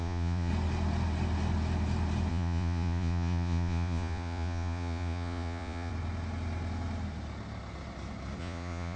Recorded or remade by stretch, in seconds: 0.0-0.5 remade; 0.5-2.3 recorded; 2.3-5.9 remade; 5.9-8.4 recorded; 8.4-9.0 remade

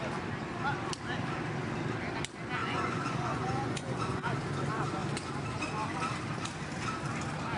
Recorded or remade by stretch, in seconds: 0.0-2.6 recorded; 2.6-4.3 remade; 4.3-7.6 recorded

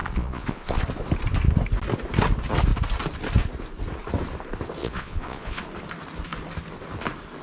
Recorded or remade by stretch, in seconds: 0.0-0.8 remade; 0.8-4.8 recorded; 4.8-5.6 remade; 5.6-7.4 recorded

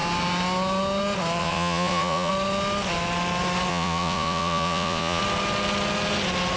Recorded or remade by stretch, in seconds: 0.0-1.4 recorded; 1.4-2.3 remade; 2.3-3.7 recorded; 3.7-5.2 remade; 5.2-6.6 recorded

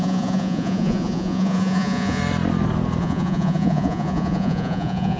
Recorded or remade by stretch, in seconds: 0.0-2.2 remade; 2.2-3.0 recorded; 3.0-5.2 remade

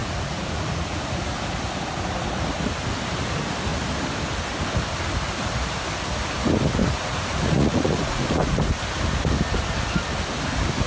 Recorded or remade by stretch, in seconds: 0.0-1.2 remade; 1.2-6.8 recorded; 6.8-8.6 remade; 8.6-10.9 recorded

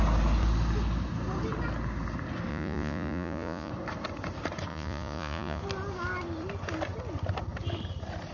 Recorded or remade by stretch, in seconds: 0.0-2.5 recorded; 2.5-3.7 remade; 3.7-4.7 recorded; 4.7-5.6 remade; 5.6-8.3 recorded

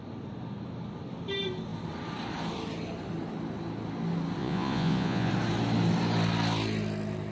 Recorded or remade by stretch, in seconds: 0.0-4.4 recorded; 4.4-5.3 remade; 5.3-7.3 recorded